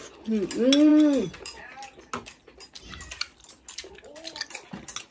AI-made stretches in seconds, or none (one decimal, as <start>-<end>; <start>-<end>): none